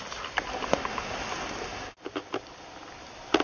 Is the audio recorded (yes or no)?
yes